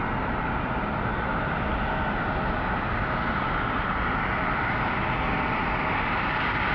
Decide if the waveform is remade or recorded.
recorded